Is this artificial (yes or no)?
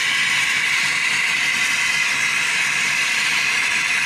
yes